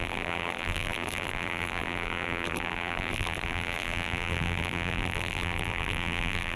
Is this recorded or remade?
remade